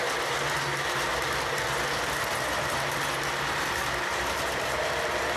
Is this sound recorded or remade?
recorded